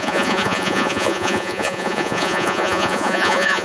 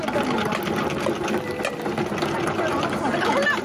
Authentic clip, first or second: second